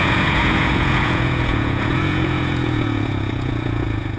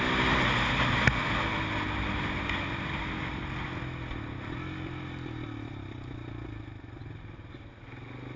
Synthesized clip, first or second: first